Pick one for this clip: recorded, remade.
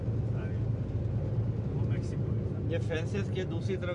recorded